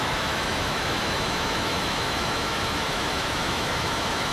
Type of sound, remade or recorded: remade